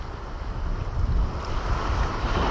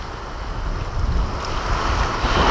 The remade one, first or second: first